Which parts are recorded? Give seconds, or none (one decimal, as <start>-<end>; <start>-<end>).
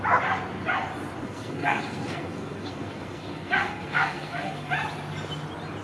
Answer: 0.0-1.2; 4.7-5.8